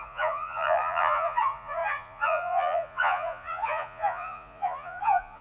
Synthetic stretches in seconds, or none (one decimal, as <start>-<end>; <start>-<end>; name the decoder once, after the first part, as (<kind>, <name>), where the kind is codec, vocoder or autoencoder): 0.0-5.4 (vocoder, Vocos)